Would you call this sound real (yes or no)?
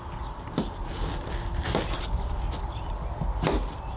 yes